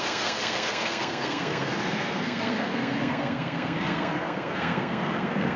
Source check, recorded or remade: remade